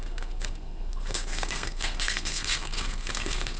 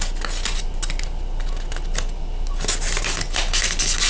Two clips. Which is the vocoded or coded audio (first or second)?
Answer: first